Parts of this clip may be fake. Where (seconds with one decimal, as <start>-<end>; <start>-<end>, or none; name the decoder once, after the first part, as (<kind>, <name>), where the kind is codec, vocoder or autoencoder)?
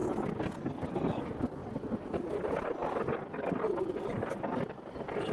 none